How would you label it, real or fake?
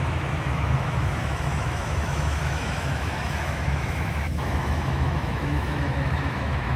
fake